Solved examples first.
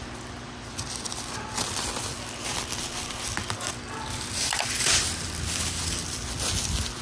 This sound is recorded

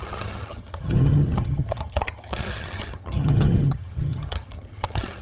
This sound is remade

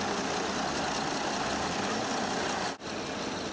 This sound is recorded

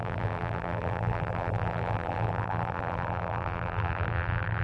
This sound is remade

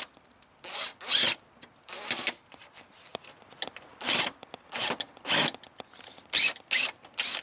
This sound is recorded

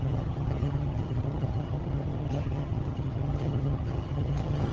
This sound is remade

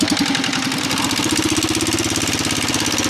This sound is remade